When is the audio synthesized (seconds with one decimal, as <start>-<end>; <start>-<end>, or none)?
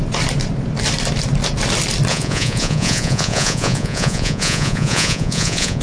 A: 2.1-5.8